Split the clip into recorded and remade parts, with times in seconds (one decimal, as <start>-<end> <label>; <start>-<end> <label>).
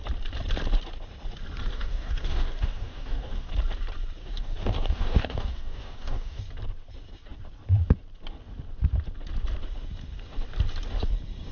0.0-1.7 recorded; 1.7-3.5 remade; 3.5-4.2 recorded; 4.2-6.4 remade; 6.4-11.5 recorded